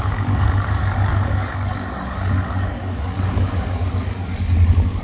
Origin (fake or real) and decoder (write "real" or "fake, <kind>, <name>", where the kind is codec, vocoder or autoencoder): fake, codec, DAC